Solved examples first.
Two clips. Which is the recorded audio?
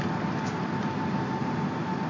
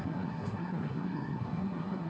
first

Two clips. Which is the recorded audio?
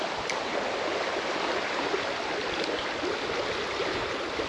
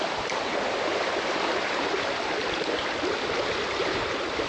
first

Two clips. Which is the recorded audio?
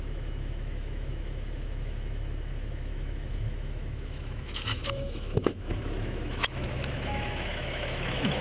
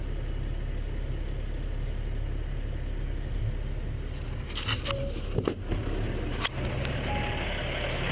second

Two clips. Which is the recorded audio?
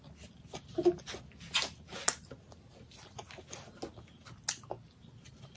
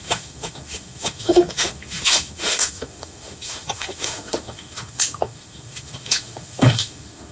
first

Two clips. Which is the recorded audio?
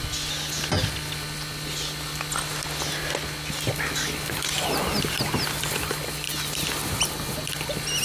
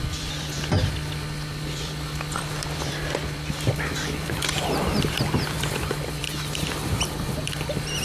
first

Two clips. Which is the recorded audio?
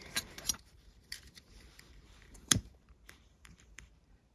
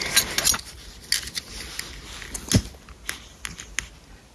second